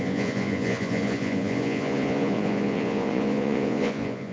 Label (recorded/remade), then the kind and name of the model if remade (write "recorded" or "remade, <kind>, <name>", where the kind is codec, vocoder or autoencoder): remade, vocoder, Vocos